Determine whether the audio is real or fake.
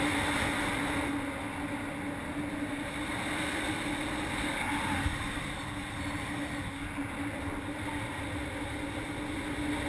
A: real